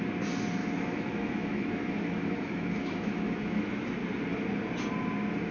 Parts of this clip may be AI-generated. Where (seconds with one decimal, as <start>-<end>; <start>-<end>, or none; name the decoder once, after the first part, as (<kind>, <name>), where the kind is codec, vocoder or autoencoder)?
0.6-3.9 (autoencoder, DAC-VAE)